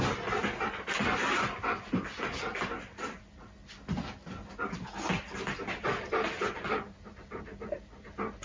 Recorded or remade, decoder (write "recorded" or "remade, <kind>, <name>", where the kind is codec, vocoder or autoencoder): recorded